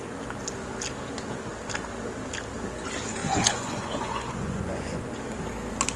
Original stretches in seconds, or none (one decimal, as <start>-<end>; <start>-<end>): 0.0-3.2; 5.1-6.0